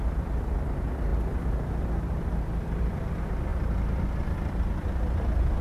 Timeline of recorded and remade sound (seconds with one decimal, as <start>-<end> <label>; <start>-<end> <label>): 0.0-1.1 remade; 1.1-2.8 recorded; 2.8-3.5 remade; 3.5-4.0 recorded; 4.0-5.6 remade